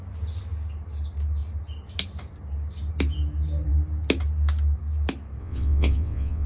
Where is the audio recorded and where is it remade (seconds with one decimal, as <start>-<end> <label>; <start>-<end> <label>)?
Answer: 0.0-5.4 recorded; 5.4-6.5 remade